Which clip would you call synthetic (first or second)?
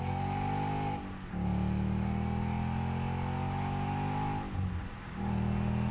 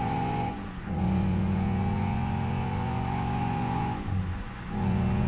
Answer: second